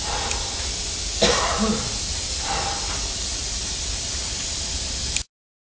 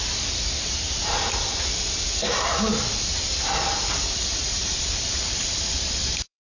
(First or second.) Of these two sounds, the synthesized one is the second